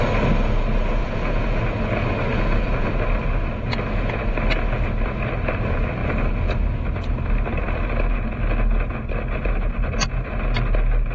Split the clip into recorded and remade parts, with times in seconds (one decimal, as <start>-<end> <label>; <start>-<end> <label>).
0.0-1.0 recorded; 1.0-1.6 remade; 1.6-2.3 recorded; 2.3-2.9 remade; 2.9-11.1 recorded

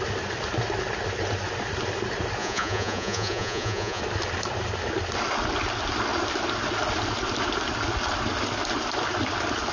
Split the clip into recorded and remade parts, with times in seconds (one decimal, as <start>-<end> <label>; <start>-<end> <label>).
0.0-2.4 recorded; 2.4-4.0 remade; 4.0-9.7 recorded

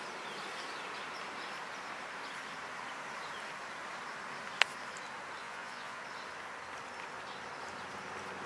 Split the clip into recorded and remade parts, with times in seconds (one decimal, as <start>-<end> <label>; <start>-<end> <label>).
0.0-5.4 recorded; 5.4-6.0 remade; 6.0-8.5 recorded